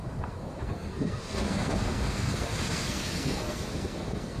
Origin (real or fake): fake